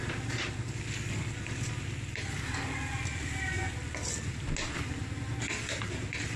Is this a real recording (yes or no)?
yes